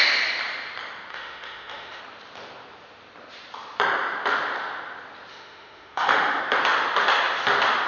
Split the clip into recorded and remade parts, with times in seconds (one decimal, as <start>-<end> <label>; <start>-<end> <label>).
0.0-1.1 recorded; 1.1-2.0 remade; 2.0-5.3 recorded; 5.3-6.4 remade; 6.4-7.9 recorded